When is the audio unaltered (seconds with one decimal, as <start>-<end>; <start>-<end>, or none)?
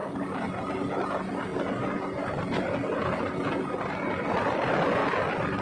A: 0.0-5.6